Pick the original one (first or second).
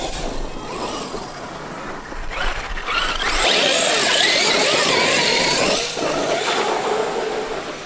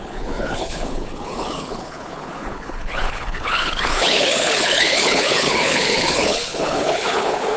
first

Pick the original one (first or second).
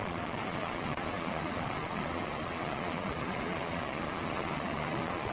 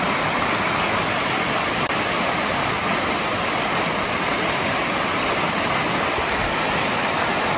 second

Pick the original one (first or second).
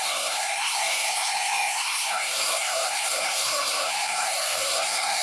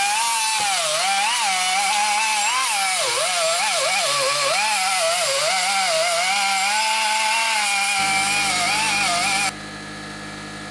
second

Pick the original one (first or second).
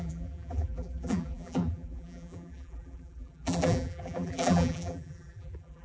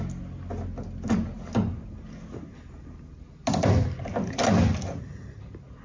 second